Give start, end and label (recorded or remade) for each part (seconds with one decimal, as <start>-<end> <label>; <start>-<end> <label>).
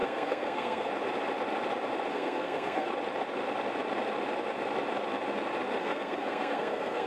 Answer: 0.0-0.9 remade; 0.9-2.1 recorded; 2.1-2.9 remade; 2.9-5.8 recorded; 5.8-7.1 remade